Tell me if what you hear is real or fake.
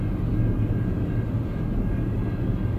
real